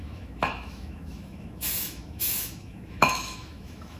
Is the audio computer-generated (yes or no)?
yes